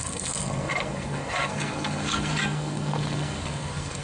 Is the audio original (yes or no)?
no